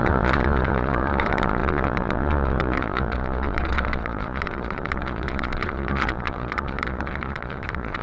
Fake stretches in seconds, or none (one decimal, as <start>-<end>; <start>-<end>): 0.0-8.0